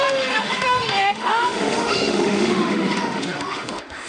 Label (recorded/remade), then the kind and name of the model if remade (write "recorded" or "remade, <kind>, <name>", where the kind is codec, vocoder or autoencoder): remade, autoencoder, DAC-VAE